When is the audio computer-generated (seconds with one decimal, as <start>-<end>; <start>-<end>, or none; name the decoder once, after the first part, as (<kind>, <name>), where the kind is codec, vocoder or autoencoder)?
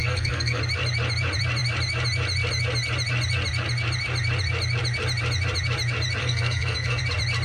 0.0-0.6 (codec, SNAC); 6.2-7.0